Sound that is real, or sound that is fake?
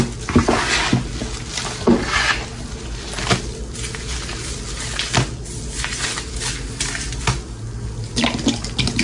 real